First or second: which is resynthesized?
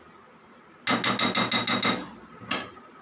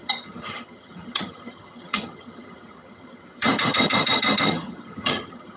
second